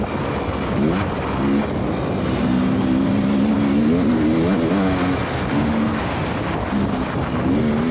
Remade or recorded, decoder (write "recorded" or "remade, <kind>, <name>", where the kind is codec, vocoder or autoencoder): recorded